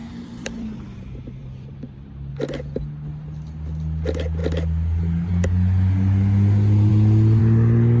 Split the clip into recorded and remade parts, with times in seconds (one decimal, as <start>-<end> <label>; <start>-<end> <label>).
0.0-2.3 remade; 2.3-8.0 recorded